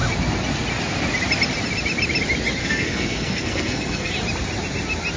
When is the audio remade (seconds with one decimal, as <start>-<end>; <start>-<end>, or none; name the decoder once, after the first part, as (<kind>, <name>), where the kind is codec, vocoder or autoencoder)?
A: 2.6-4.1 (codec, SNAC)